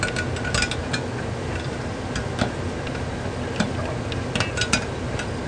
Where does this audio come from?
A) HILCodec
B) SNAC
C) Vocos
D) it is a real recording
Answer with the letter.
D